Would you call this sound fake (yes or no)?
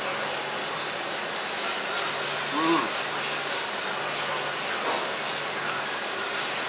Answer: no